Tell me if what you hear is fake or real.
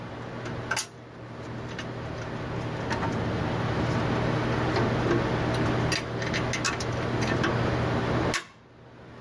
real